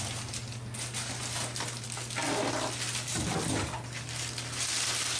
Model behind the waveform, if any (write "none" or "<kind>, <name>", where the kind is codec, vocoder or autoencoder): none